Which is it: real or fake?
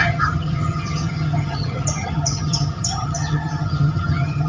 fake